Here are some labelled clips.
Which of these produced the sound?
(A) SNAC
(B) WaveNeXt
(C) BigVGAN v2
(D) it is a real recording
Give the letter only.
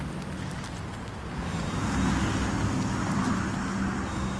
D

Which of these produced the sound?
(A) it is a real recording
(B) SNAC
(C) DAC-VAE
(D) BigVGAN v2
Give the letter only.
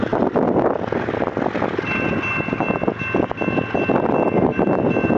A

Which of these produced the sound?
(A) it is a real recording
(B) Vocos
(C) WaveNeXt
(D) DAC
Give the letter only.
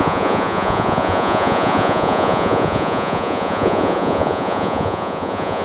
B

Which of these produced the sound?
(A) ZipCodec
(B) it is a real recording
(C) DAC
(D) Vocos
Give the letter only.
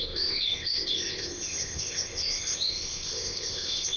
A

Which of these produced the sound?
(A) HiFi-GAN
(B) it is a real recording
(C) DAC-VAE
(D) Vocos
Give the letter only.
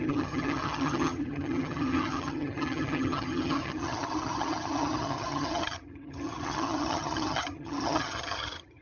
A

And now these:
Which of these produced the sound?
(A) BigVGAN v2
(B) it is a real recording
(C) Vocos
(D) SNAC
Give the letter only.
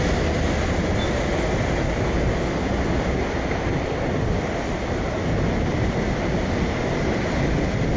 B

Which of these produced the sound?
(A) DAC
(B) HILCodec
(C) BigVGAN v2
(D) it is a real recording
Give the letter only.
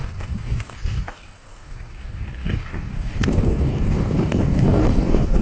A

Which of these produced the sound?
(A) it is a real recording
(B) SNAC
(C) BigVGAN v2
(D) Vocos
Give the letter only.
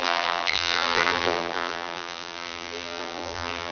C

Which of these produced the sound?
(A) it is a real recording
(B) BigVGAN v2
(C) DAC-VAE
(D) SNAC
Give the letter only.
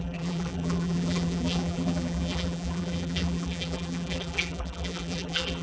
B